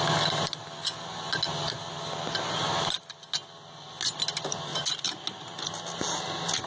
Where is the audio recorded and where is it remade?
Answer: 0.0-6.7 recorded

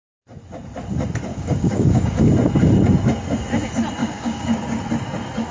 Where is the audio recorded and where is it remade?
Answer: 0.0-1.3 recorded; 1.3-2.2 remade; 2.2-4.0 recorded; 4.0-4.8 remade; 4.8-5.5 recorded

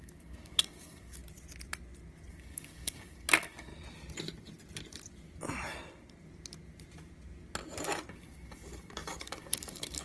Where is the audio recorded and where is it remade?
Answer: 0.0-1.2 remade; 1.2-2.3 recorded; 2.3-3.7 remade; 3.7-8.1 recorded; 8.1-10.0 remade

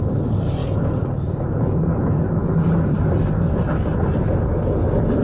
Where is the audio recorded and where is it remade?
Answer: 0.0-5.2 recorded